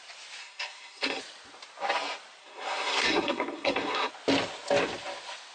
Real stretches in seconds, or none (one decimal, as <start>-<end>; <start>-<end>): 0.0-0.4; 1.2-2.4; 4.1-5.5